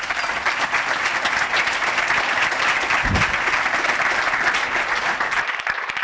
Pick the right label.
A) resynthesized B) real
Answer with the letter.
B